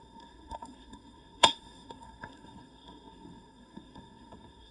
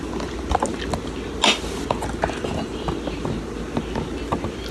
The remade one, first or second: first